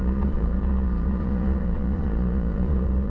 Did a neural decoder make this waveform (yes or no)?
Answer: yes